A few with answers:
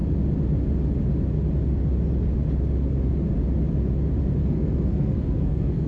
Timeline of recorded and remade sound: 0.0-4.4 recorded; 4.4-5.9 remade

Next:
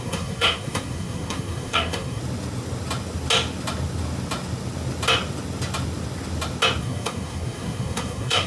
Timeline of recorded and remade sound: 0.0-2.2 remade; 2.2-6.8 recorded; 6.8-8.5 remade

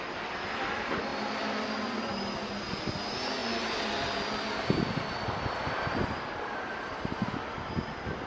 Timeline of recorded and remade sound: 0.0-8.3 recorded

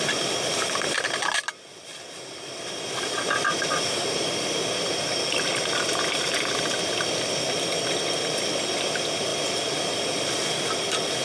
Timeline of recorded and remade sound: 0.0-11.2 recorded

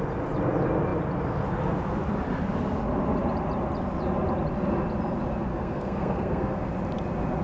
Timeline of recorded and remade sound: 0.0-5.5 recorded; 5.5-6.7 remade; 6.7-7.4 recorded

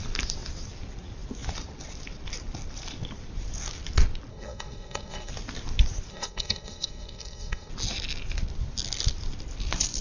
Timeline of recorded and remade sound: 0.0-4.3 recorded; 4.3-5.3 remade; 5.3-6.1 recorded; 6.1-7.7 remade; 7.7-10.0 recorded